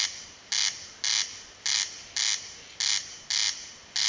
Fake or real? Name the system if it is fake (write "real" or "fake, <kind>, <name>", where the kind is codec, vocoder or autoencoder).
real